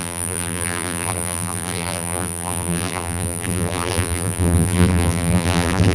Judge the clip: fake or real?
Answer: fake